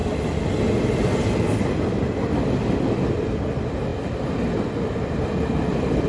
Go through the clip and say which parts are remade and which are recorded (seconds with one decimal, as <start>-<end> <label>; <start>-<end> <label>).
0.0-2.3 recorded; 2.3-6.1 remade